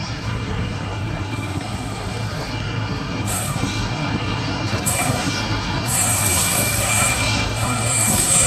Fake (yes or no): yes